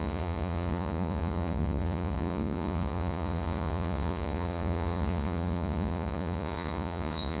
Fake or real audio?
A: fake